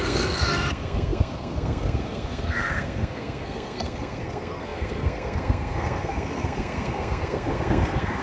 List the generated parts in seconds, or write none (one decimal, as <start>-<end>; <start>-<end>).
0.0-8.2